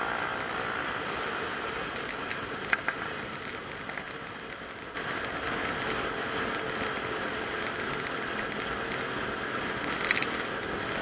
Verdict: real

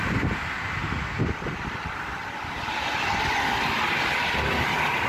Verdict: real